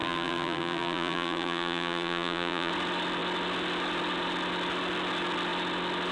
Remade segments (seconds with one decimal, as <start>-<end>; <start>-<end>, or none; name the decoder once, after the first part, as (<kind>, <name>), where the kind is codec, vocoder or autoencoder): 0.0-2.7 (vocoder, BigVGAN v2)